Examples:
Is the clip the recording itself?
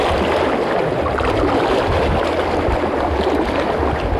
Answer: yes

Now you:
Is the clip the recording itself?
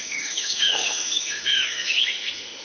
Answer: no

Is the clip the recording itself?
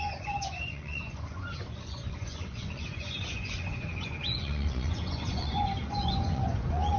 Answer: no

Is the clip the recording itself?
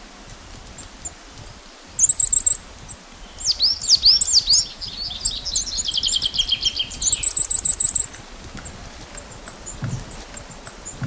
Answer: yes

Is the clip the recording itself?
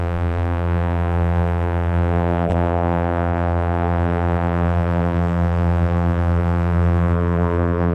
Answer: no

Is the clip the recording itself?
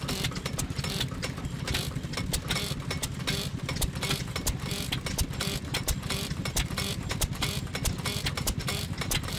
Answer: yes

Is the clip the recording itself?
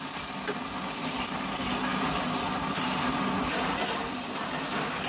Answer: yes